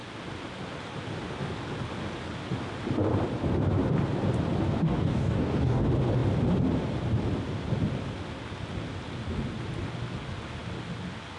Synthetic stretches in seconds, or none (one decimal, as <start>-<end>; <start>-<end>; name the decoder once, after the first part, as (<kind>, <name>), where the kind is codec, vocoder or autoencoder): 4.8-5.8 (codec, DAC)